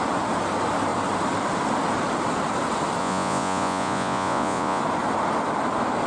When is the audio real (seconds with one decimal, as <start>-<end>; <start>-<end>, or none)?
0.0-3.0; 4.8-6.1